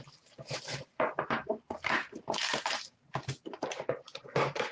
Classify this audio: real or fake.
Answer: fake